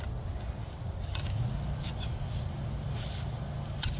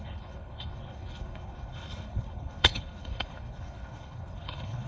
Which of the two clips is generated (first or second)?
second